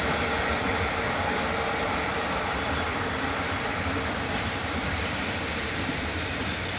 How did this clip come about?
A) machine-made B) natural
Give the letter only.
A